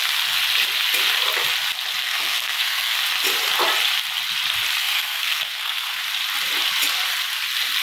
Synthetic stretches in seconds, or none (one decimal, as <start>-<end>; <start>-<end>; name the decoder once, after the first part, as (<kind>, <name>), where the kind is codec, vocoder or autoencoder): 2.0-3.0 (codec, SNAC); 4.8-6.0